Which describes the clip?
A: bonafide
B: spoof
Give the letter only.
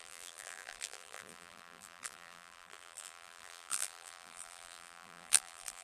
B